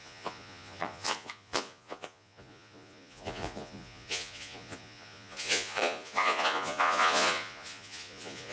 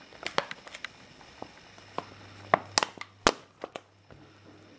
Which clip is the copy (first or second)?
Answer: first